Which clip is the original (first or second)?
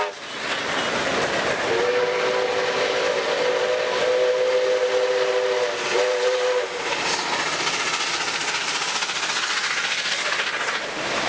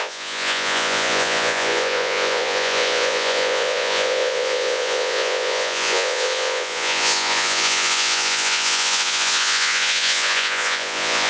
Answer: first